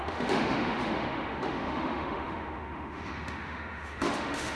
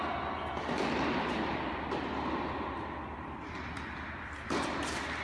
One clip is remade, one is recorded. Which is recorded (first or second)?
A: second